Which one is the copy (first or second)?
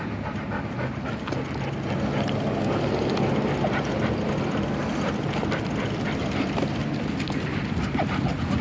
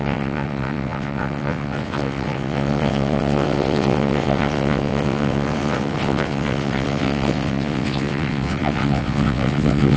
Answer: second